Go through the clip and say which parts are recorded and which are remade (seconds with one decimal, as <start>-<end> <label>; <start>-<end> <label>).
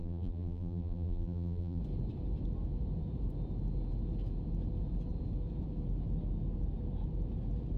0.0-1.8 remade; 1.8-7.8 recorded